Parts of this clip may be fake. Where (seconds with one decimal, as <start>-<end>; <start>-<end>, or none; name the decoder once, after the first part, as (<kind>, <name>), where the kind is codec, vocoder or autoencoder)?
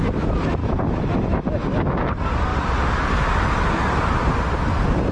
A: 0.6-2.1 (autoencoder, DAC-VAE)